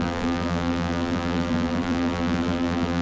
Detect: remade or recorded remade